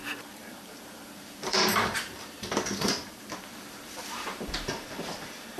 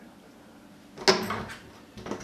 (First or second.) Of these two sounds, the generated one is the first